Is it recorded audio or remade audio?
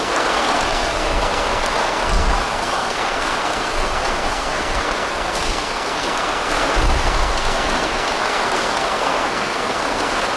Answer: remade